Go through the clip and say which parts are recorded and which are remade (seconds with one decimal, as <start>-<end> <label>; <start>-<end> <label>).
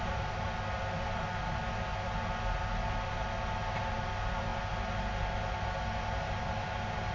0.0-7.1 recorded